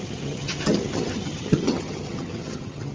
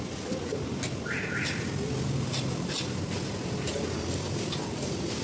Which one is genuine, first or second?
second